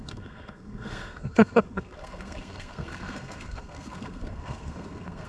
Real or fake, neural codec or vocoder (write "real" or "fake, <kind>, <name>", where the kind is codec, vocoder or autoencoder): fake, codec, SNAC